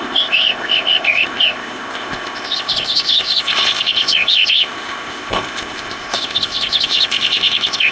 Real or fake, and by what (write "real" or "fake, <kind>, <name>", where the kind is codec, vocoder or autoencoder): fake, codec, ZipCodec